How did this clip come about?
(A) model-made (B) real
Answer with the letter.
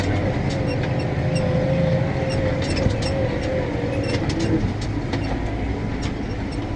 B